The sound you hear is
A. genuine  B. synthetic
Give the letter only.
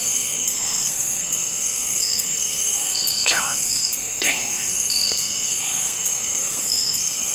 B